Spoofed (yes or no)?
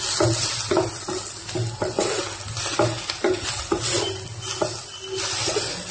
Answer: no